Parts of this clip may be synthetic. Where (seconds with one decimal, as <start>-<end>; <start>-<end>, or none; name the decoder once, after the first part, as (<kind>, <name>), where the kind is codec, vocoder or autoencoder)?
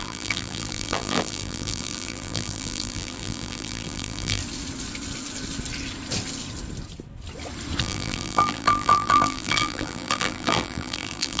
0.0-4.4 (vocoder, BigVGAN v2); 7.8-11.4